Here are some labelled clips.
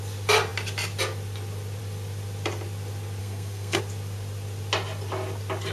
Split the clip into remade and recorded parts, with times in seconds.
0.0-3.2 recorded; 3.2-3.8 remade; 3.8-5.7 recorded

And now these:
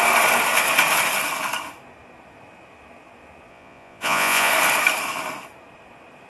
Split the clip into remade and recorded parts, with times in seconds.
0.0-3.5 recorded; 3.5-4.5 remade; 4.5-6.3 recorded

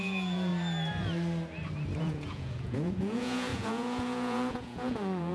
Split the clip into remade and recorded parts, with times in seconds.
0.0-0.5 remade; 0.5-2.0 recorded; 2.0-5.3 remade

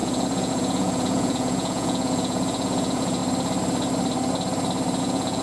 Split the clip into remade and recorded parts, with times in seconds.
0.0-3.2 remade; 3.2-5.0 recorded; 5.0-5.4 remade

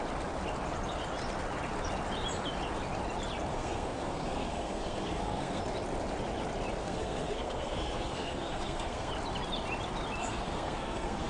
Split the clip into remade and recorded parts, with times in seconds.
0.0-3.5 recorded; 3.5-5.6 remade; 5.6-6.8 recorded; 6.8-9.1 remade; 9.1-10.2 recorded; 10.2-11.3 remade

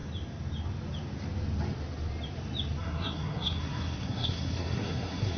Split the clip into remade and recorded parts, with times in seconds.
0.0-2.8 recorded; 2.8-5.4 remade

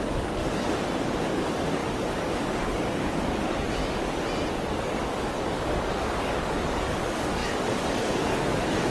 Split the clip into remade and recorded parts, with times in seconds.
0.0-0.4 remade; 0.4-1.3 recorded; 1.3-3.8 remade; 3.8-4.7 recorded; 4.7-8.9 remade